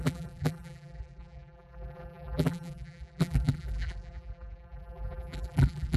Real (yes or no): no